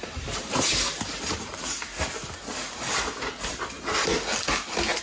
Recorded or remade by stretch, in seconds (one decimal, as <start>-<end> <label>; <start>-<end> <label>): 0.0-1.9 remade; 1.9-5.0 recorded